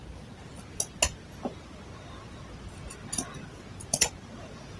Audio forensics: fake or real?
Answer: real